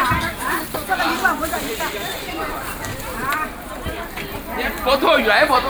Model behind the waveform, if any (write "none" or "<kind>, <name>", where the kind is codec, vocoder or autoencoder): vocoder, BigVGAN v2